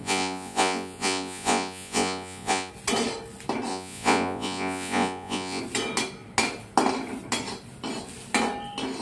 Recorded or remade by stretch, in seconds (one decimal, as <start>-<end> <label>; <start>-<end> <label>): 0.0-2.7 remade; 2.7-3.7 recorded; 3.7-5.6 remade; 5.6-9.0 recorded